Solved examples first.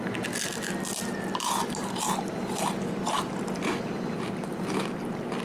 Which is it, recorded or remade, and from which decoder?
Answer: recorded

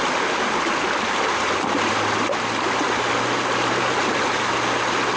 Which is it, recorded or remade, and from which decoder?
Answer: recorded